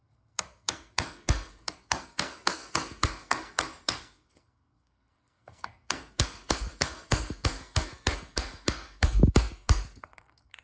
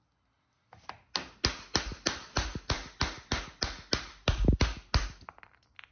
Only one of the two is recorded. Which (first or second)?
second